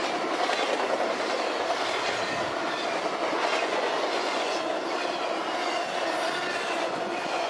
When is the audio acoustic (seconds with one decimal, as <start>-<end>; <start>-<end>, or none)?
0.0-3.5; 4.7-6.5